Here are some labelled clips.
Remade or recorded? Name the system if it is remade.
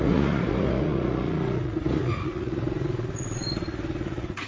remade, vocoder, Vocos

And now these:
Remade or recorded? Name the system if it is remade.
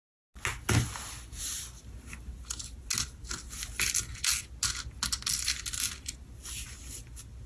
recorded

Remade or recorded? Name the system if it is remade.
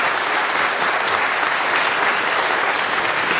remade, vocoder, BigVGAN v2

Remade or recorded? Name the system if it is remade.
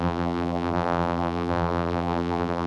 remade, vocoder, BigVGAN v2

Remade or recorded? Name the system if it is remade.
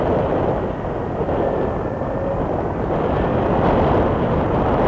recorded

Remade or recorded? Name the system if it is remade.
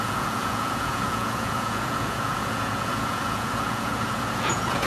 remade, vocoder, Vocos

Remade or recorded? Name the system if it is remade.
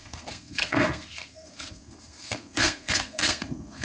remade, codec, SNAC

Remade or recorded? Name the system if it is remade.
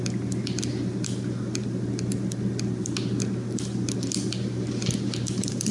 recorded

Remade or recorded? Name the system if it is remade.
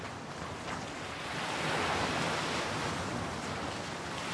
recorded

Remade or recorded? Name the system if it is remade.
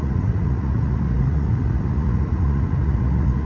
remade, vocoder, Vocos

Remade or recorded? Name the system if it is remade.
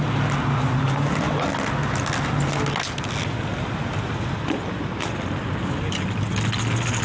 recorded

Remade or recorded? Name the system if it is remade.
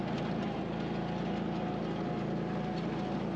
recorded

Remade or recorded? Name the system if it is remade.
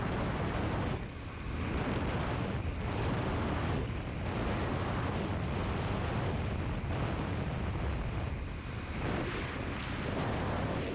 recorded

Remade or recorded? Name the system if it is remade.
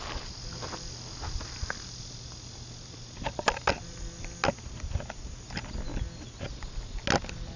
recorded